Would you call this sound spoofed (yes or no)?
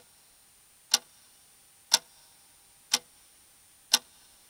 no